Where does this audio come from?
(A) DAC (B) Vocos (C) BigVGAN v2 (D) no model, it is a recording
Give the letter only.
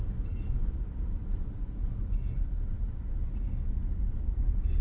D